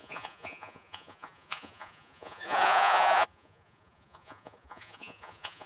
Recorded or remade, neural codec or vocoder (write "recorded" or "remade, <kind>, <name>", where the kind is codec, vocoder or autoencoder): remade, vocoder, Vocos